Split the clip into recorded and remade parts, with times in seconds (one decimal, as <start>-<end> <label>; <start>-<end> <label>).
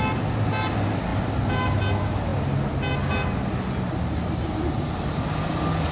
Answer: 0.0-5.9 recorded